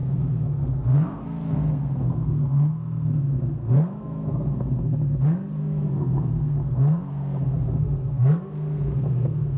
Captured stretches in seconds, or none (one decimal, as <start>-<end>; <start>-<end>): 4.8-5.6